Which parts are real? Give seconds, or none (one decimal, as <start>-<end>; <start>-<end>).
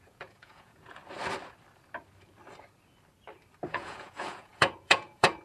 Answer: 1.0-3.7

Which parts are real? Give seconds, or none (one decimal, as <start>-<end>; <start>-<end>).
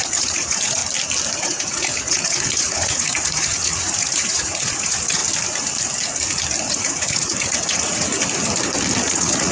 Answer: 0.8-1.4; 5.2-6.7; 8.1-9.0